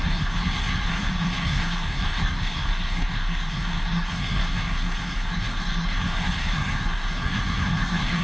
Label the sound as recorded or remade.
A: remade